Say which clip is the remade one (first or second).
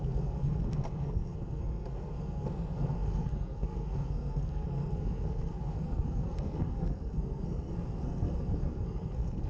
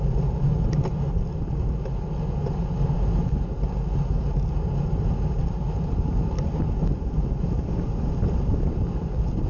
first